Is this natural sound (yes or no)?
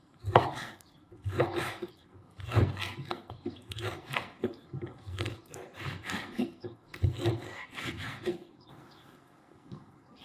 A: no